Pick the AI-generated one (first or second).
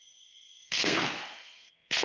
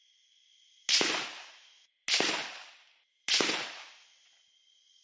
first